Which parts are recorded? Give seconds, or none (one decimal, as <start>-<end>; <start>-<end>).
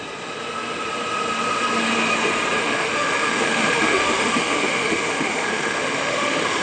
0.0-2.6